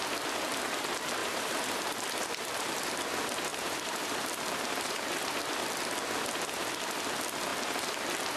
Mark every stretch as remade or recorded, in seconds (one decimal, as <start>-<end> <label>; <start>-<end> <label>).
0.0-1.2 recorded; 1.2-3.0 remade; 3.0-3.5 recorded; 3.5-5.3 remade; 5.3-8.4 recorded